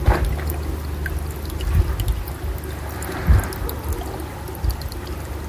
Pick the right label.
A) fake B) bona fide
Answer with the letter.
B